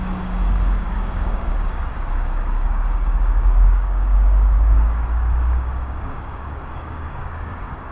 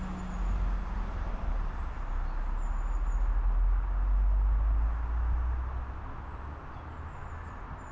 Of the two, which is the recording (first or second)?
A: second